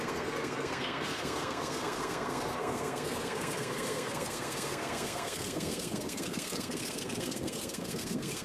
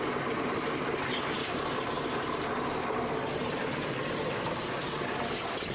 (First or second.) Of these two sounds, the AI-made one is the first